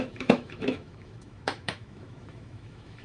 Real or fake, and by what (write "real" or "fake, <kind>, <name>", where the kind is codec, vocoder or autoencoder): fake, autoencoder, DAC-VAE